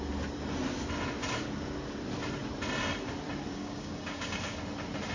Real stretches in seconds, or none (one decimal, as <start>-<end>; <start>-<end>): 0.0-3.5; 4.6-5.1